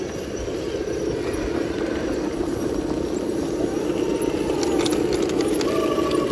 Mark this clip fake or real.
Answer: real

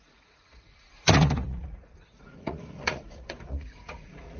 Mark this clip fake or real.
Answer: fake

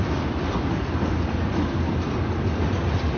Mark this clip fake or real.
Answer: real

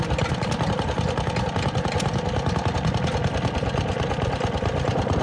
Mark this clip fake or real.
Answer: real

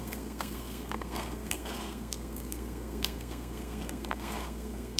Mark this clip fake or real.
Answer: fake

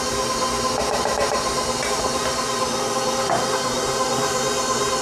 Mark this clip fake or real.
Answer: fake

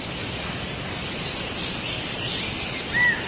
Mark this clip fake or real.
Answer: real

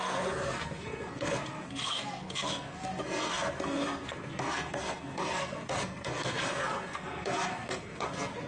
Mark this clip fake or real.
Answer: fake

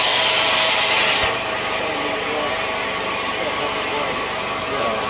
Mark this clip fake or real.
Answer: real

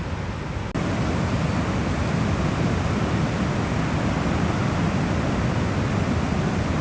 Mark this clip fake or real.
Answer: real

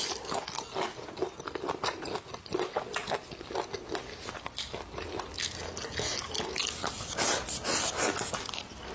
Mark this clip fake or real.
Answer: real